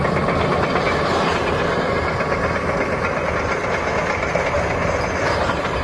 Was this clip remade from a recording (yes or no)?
no